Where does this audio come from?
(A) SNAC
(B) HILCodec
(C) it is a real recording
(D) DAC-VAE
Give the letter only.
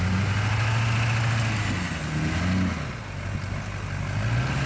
C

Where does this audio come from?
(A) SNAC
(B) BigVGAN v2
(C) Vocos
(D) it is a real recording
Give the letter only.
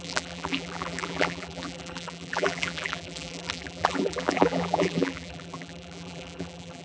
B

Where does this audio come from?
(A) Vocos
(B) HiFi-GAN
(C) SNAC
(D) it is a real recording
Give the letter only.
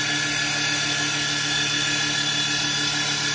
D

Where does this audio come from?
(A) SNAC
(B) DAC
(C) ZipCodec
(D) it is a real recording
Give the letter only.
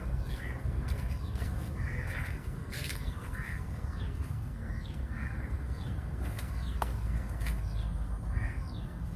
A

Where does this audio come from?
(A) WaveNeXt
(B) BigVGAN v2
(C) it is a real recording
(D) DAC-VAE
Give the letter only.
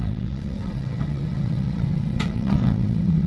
A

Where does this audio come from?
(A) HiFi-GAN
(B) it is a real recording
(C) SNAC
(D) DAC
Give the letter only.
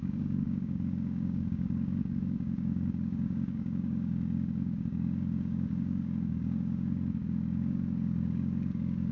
D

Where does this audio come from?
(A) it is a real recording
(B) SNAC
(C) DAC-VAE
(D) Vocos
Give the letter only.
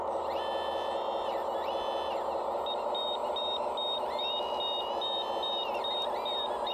A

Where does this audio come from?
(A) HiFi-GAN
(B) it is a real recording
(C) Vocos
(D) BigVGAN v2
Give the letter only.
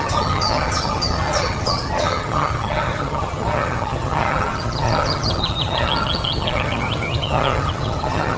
A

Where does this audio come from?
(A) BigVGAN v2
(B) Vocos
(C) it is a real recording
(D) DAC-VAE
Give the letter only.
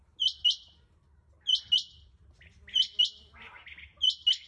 C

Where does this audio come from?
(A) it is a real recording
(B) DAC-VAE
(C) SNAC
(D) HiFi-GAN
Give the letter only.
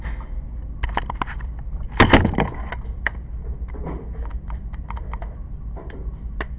A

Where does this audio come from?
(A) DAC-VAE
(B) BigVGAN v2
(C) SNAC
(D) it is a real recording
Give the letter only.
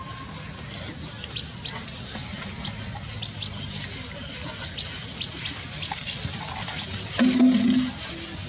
D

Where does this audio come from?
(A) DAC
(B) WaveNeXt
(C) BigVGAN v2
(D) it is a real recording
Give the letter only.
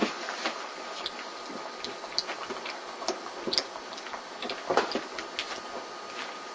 D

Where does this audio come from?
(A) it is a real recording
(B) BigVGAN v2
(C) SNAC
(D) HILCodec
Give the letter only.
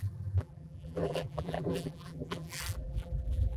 B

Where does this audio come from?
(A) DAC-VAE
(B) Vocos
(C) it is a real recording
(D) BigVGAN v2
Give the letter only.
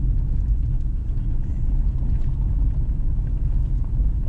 C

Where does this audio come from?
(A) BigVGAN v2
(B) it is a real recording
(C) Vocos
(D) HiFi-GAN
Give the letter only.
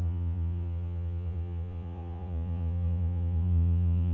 C